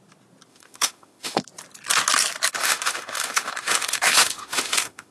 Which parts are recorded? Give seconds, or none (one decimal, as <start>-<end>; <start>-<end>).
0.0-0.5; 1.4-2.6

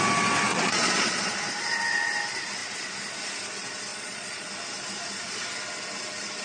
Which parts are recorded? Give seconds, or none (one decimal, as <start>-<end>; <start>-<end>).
0.0-0.5; 1.3-3.9; 4.5-6.4

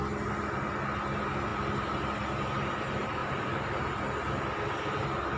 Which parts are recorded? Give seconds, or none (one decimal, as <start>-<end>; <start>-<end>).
0.0-3.2; 3.8-5.4